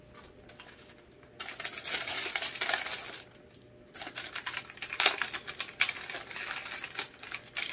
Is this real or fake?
real